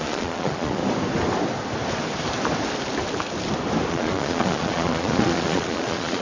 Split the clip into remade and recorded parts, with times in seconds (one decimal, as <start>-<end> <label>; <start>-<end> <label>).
0.0-0.8 remade; 0.8-3.9 recorded; 3.9-6.2 remade